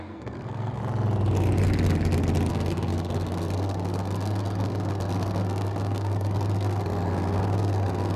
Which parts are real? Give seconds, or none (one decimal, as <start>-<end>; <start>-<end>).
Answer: 0.8-2.5